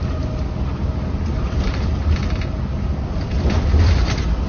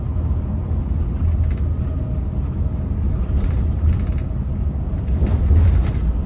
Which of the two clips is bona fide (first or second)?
second